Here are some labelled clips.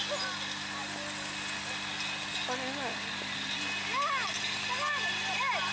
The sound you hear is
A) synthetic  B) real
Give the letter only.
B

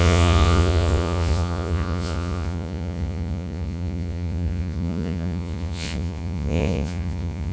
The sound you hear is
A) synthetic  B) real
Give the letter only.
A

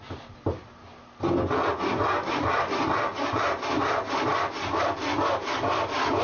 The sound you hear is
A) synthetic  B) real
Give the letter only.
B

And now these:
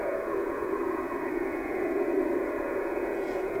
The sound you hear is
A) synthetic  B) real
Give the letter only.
A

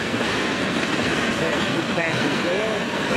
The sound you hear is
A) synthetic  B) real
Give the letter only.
A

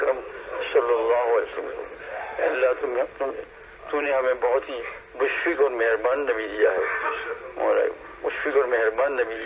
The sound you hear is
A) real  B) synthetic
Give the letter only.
A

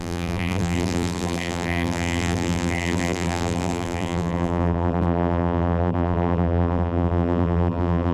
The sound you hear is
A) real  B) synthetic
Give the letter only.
B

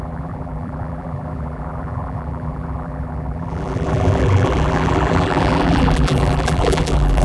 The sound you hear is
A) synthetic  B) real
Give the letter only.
A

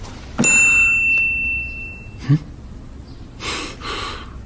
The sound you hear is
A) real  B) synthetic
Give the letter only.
A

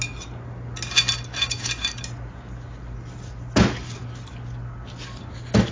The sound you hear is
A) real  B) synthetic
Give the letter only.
A